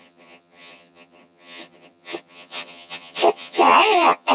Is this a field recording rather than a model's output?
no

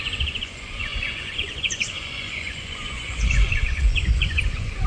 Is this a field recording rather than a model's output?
no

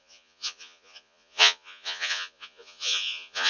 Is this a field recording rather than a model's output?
no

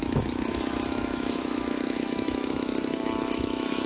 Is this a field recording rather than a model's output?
no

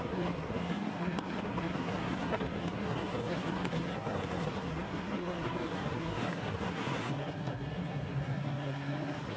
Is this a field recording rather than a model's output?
no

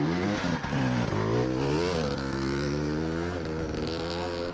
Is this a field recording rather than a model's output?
yes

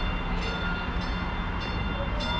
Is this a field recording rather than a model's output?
yes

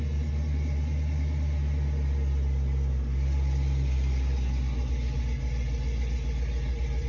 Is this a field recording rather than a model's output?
yes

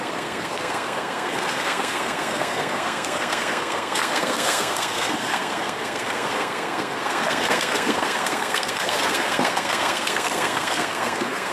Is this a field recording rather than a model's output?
no